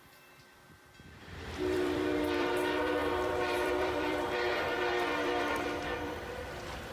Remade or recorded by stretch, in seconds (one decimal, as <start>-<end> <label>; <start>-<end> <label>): 0.0-6.9 remade